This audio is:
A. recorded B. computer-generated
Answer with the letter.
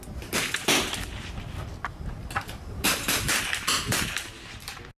A